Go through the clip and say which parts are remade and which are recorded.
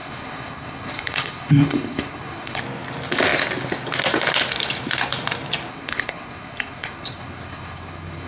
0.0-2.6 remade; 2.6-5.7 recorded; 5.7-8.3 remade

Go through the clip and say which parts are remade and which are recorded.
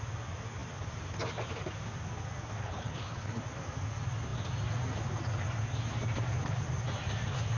0.0-2.6 recorded; 2.6-3.4 remade; 3.4-7.6 recorded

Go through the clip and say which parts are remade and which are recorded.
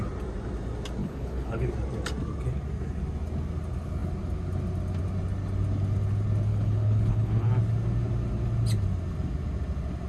0.0-1.0 recorded; 1.0-1.7 remade; 1.7-6.5 recorded; 6.5-7.5 remade; 7.5-10.1 recorded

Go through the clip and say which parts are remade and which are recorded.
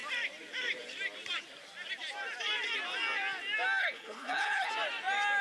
0.0-3.8 recorded; 3.8-4.7 remade; 4.7-5.4 recorded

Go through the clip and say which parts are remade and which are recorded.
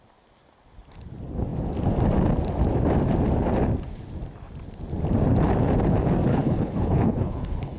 0.0-6.3 recorded; 6.3-7.8 remade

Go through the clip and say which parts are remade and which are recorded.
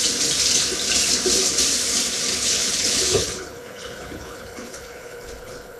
0.0-2.3 recorded; 2.3-5.8 remade